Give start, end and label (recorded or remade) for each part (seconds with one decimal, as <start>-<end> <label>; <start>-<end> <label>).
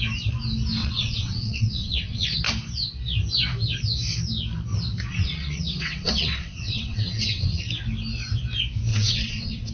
0.0-0.8 recorded; 0.8-2.4 remade; 2.4-5.1 recorded; 5.1-7.7 remade; 7.7-8.9 recorded; 8.9-9.7 remade